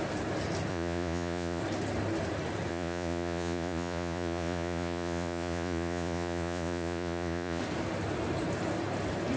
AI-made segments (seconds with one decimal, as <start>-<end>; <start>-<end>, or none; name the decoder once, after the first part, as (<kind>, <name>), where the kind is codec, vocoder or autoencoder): 0.7-1.6 (vocoder, Vocos); 2.7-7.6